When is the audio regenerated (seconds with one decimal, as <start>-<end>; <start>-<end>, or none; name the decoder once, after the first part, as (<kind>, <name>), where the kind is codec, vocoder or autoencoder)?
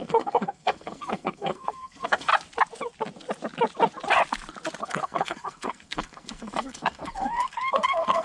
0.0-2.3 (codec, SNAC); 4.8-8.2